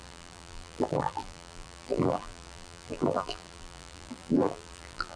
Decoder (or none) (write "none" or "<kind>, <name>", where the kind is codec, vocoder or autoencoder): vocoder, BigVGAN v2